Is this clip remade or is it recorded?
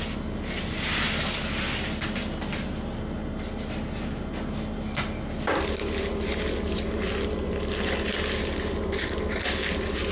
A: recorded